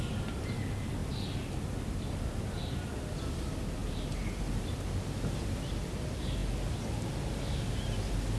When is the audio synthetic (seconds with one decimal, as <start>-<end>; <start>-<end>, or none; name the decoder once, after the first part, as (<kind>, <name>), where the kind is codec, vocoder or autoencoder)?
none